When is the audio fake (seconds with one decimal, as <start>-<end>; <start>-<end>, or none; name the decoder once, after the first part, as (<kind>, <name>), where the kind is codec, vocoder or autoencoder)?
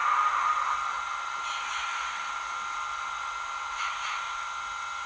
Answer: none